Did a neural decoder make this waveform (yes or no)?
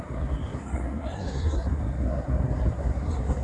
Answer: yes